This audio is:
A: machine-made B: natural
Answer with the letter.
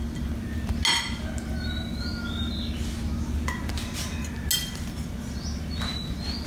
B